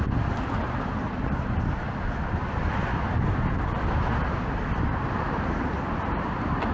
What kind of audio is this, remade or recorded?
recorded